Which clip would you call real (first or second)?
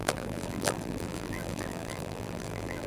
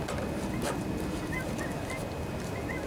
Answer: second